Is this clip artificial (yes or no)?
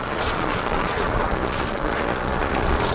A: yes